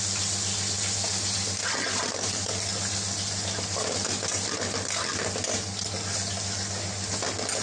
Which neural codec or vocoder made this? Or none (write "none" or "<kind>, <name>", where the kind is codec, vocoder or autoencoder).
none